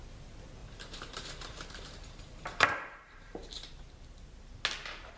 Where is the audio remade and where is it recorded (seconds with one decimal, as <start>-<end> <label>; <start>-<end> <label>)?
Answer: 0.0-0.6 recorded; 0.6-3.7 remade; 3.7-5.2 recorded